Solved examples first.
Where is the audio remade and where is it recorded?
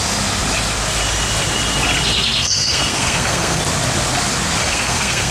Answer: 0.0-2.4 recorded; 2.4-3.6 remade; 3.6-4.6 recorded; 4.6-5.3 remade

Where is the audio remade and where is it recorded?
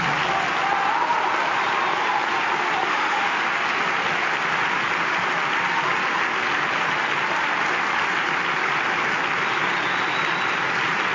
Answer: 0.0-2.9 recorded; 2.9-3.4 remade; 3.4-11.1 recorded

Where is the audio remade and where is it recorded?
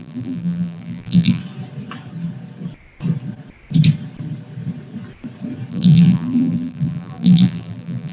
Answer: 0.0-1.4 remade; 1.4-5.7 recorded; 5.7-8.1 remade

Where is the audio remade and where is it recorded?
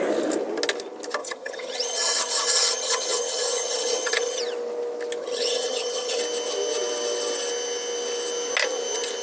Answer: 0.0-1.2 recorded; 1.2-4.4 remade; 4.4-5.2 recorded; 5.2-6.2 remade; 6.2-9.2 recorded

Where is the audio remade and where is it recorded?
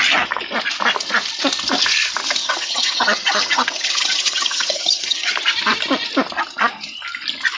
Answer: 0.0-2.4 recorded; 2.4-5.3 remade; 5.3-7.6 recorded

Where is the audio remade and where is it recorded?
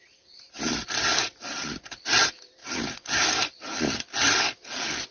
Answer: 0.0-5.1 recorded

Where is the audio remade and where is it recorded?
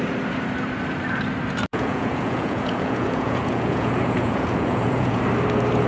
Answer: 0.0-1.7 recorded; 1.7-5.2 remade; 5.2-5.9 recorded